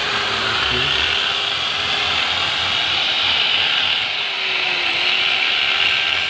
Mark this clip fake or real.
real